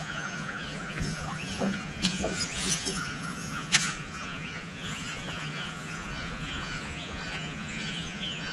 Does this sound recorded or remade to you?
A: remade